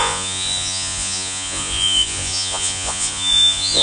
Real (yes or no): no